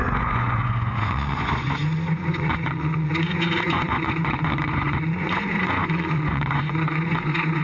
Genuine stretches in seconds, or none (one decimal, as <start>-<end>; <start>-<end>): none